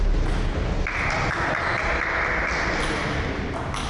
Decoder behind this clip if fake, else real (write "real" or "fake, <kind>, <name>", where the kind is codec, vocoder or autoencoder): real